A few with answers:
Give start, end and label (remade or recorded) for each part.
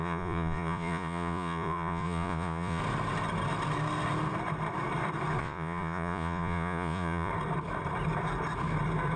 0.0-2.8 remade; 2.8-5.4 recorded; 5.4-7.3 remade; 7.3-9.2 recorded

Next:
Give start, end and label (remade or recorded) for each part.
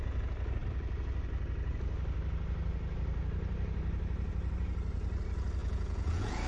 0.0-5.6 recorded; 5.6-6.5 remade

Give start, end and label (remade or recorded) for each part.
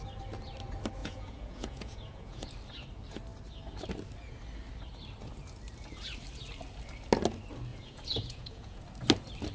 0.0-1.0 recorded; 1.0-2.5 remade; 2.5-7.7 recorded; 7.7-8.8 remade; 8.8-9.5 recorded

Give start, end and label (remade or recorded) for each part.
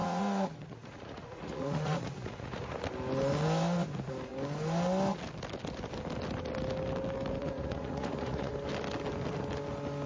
0.0-2.8 remade; 2.8-7.4 recorded; 7.4-8.5 remade; 8.5-10.1 recorded